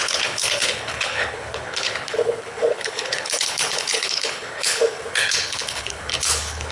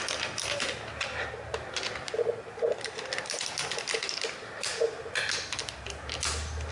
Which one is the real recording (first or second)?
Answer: second